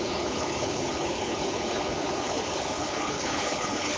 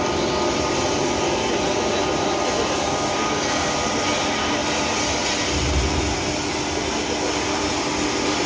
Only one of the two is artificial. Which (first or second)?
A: first